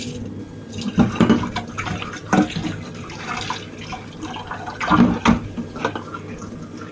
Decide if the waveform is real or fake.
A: real